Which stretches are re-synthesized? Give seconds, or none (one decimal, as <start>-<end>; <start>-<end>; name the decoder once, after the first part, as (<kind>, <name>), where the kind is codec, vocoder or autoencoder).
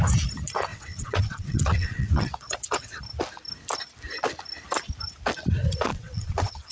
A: 0.7-3.0 (vocoder, WaveNeXt); 5.9-6.7